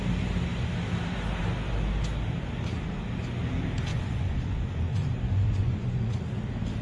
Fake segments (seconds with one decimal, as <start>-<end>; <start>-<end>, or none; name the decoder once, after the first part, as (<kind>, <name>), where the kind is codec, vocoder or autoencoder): 3.9-6.2 (vocoder, Vocos)